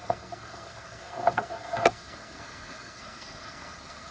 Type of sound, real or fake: fake